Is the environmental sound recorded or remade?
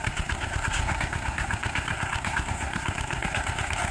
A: remade